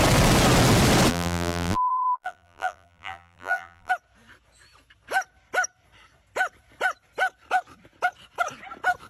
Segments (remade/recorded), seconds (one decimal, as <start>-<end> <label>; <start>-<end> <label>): 0.0-1.1 recorded; 1.1-3.9 remade; 3.9-9.1 recorded